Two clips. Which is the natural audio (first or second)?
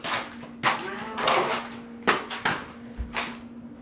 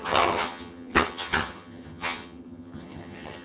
first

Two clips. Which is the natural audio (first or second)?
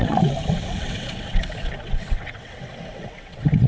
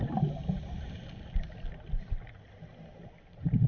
second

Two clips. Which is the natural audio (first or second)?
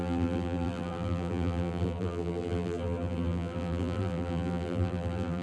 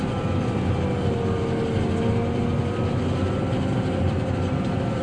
second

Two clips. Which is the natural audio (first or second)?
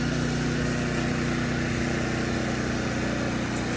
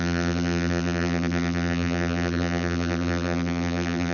first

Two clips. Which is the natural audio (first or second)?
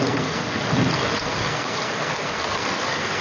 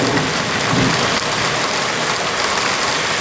second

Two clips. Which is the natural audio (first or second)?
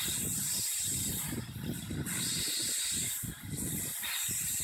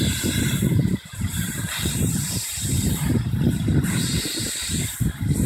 first